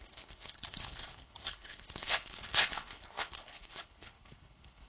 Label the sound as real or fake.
fake